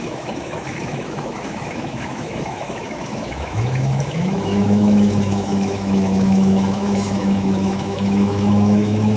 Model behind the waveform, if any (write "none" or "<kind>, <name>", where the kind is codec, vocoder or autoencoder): autoencoder, DAC-VAE